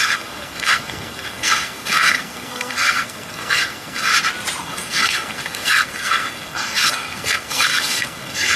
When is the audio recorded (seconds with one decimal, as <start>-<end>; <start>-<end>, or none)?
4.1-4.6